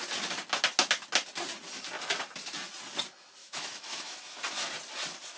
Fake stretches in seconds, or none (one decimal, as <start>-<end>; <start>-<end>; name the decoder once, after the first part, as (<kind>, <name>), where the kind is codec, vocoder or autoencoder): 3.4-4.2 (autoencoder, DAC-VAE)